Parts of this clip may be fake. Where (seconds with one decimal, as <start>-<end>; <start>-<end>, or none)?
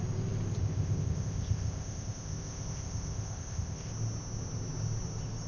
0.6-3.9